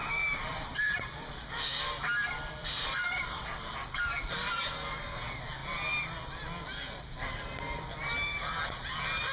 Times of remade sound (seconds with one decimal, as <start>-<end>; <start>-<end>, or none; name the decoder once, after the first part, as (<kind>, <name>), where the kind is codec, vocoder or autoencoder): 0.0-1.3 (vocoder, BigVGAN v2); 2.6-3.7